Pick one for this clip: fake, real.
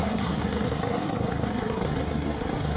fake